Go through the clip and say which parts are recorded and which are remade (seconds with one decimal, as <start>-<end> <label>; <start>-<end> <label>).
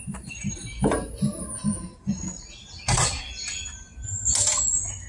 0.0-5.1 recorded